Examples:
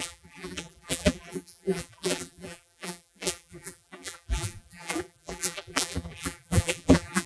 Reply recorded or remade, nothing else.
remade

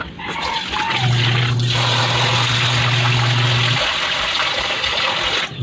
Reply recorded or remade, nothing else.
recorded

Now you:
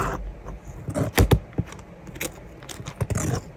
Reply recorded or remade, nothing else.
recorded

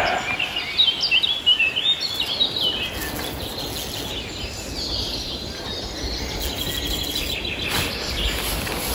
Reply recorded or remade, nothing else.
recorded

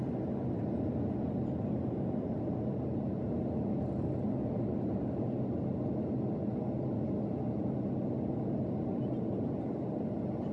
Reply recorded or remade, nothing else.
recorded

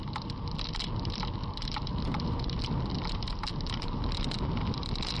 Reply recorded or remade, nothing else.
recorded